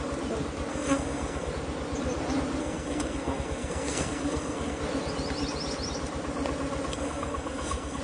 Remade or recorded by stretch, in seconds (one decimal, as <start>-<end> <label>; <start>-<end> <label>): 0.0-0.7 recorded; 0.7-1.5 remade; 1.5-2.6 recorded; 2.6-4.8 remade; 4.8-6.9 recorded; 6.9-8.0 remade